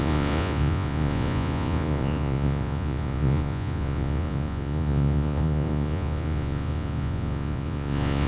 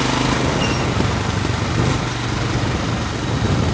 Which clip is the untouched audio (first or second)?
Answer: second